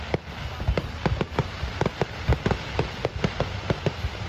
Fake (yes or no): no